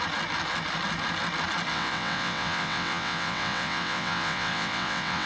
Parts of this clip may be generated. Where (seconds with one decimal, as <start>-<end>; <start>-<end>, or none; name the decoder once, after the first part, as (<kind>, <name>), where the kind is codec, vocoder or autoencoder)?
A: 1.7-5.3 (vocoder, WaveNeXt)